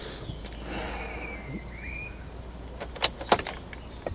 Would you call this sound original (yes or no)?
yes